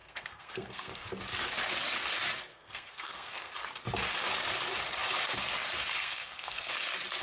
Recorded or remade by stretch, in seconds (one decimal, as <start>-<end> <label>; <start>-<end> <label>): 0.0-1.1 remade; 1.1-2.5 recorded; 2.5-3.5 remade; 3.5-6.0 recorded; 6.0-6.7 remade; 6.7-7.2 recorded